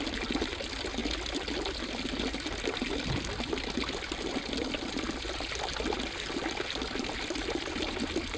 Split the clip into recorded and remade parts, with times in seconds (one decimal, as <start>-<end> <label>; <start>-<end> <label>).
0.0-8.4 recorded